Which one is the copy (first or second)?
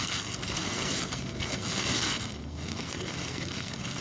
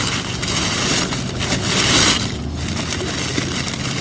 first